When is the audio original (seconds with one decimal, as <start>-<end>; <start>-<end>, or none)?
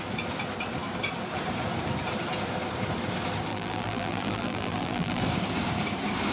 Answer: 0.0-3.5; 5.2-6.3